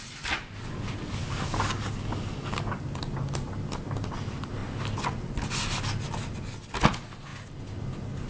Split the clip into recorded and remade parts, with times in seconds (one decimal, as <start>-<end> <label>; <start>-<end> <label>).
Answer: 0.0-1.2 recorded; 1.2-2.8 remade; 2.8-8.3 recorded